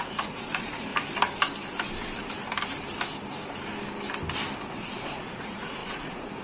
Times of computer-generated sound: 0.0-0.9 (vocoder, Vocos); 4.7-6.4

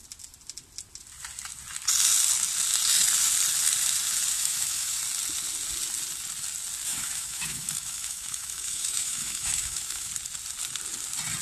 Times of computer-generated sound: 4.3-5.0 (autoencoder, DAC-VAE); 6.9-10.1

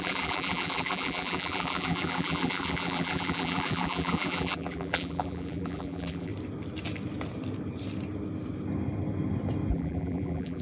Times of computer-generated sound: 0.0-6.3 (vocoder, BigVGAN v2); 9.7-10.6

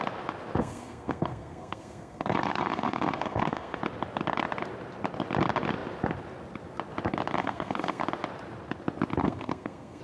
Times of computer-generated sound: 0.6-3.8 (codec, SNAC); 7.4-8.0; 9.2-10.0